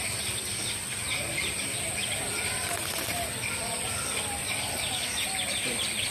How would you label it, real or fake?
real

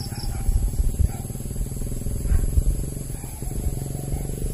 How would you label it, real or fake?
real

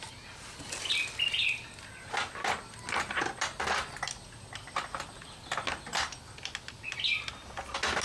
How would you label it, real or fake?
real